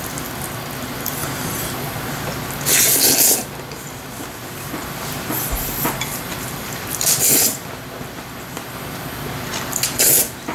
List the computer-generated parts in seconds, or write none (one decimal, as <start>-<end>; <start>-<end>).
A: 4.8-7.7